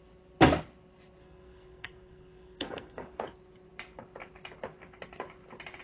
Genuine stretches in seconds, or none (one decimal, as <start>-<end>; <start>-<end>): 0.0-1.2; 3.2-5.8